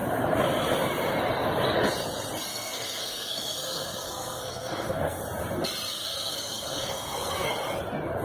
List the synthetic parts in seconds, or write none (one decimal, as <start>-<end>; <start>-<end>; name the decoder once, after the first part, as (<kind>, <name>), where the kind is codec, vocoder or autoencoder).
2.5-5.2 (codec, SNAC); 5.9-7.5